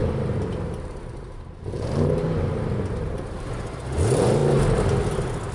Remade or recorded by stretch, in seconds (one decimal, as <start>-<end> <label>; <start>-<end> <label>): 0.0-4.4 remade; 4.4-5.5 recorded